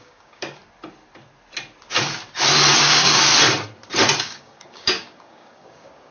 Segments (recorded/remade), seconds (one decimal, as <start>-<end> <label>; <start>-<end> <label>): 0.0-0.6 remade; 0.6-2.8 recorded; 2.8-3.3 remade; 3.3-4.2 recorded; 4.2-6.1 remade